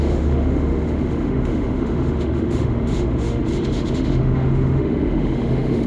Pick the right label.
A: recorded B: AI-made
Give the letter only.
B